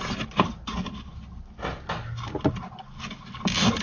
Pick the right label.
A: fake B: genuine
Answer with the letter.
B